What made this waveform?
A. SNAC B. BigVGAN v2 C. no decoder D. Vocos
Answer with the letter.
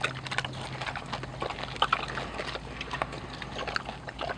C